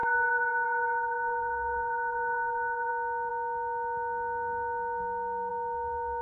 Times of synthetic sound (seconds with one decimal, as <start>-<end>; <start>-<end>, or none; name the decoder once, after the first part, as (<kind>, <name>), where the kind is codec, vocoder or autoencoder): 0.0-2.9 (codec, SNAC)